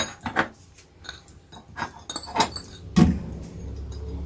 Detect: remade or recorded recorded